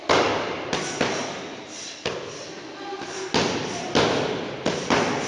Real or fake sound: real